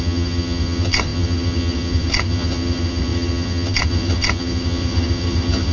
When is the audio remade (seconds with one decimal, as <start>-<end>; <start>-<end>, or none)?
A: 0.0-5.7

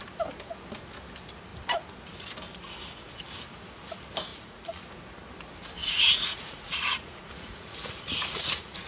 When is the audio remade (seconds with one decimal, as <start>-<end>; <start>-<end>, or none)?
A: 4.3-4.8; 5.8-8.9

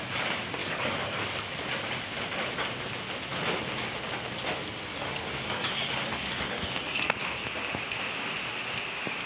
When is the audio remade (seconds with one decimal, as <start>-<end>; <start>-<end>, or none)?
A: 0.6-1.2; 4.9-7.1

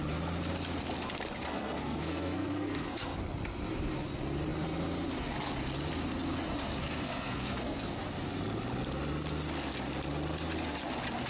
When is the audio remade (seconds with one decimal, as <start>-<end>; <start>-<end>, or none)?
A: 1.5-3.2; 6.8-8.0